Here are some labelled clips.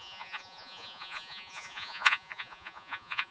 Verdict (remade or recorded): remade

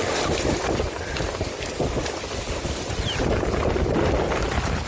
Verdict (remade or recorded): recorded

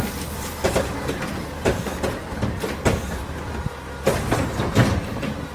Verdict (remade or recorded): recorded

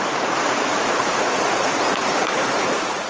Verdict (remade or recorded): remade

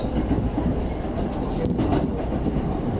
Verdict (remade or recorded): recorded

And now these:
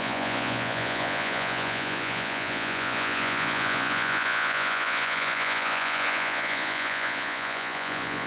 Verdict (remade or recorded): remade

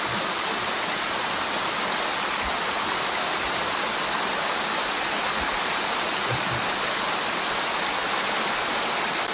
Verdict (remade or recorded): recorded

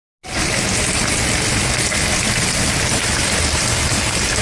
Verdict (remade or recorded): recorded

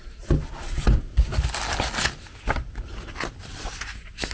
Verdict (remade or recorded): recorded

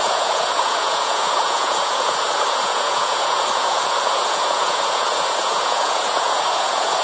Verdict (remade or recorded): remade